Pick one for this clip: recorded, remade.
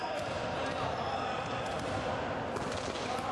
recorded